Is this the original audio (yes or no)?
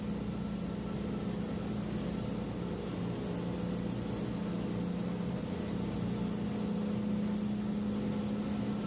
yes